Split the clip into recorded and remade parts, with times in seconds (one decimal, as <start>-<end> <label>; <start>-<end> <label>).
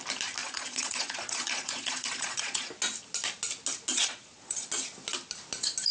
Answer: 0.0-0.4 recorded; 0.4-2.7 remade; 2.7-3.9 recorded; 3.9-4.7 remade; 4.7-5.9 recorded